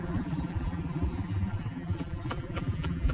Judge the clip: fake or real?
fake